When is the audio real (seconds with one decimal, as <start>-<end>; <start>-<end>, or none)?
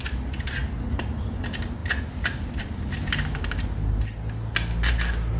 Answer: 0.0-5.4